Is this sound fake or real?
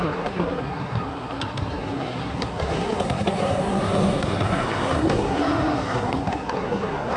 fake